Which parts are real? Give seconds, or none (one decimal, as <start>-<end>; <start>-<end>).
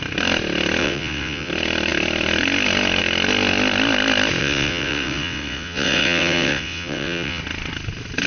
0.0-0.8; 1.5-4.4; 7.4-8.3